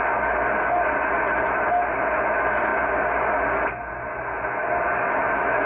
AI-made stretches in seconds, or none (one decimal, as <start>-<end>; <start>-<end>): none

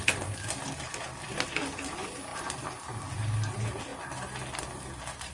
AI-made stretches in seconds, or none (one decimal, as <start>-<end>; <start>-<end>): none